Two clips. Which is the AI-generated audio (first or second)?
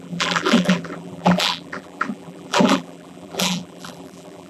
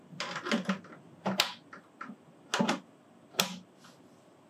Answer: first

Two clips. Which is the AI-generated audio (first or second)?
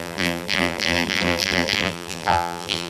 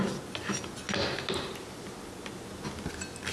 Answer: first